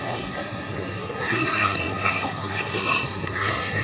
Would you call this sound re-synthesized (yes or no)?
yes